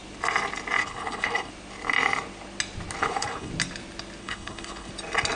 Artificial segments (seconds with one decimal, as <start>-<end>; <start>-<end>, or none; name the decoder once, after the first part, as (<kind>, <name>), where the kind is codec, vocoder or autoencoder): 0.8-1.5 (codec, HILCodec); 3.0-3.5; 4.2-4.9